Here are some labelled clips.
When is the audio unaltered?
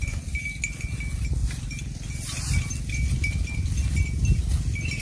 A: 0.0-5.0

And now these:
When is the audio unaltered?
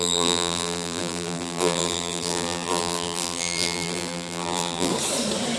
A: 4.9-5.6